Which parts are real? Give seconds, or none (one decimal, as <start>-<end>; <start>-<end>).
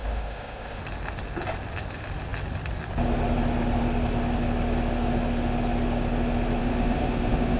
0.8-6.6